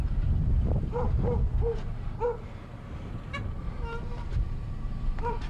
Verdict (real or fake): real